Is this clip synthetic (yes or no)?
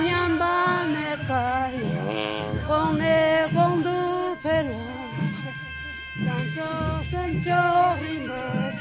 yes